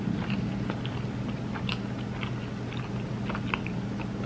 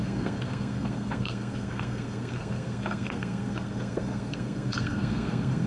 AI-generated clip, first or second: second